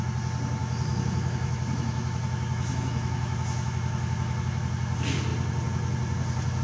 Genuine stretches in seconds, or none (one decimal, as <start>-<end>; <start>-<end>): 0.0-0.6; 4.6-6.6